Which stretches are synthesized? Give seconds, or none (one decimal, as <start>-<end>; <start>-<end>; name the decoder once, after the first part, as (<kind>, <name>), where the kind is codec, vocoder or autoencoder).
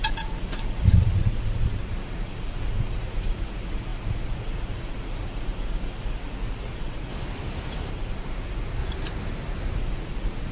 0.0-7.1 (vocoder, Vocos); 7.9-8.8; 9.8-10.5